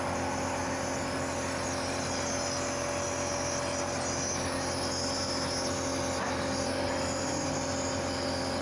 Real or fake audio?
real